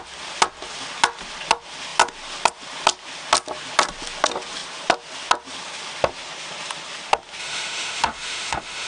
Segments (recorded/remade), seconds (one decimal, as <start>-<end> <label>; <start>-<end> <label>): 0.0-7.4 recorded; 7.4-8.9 remade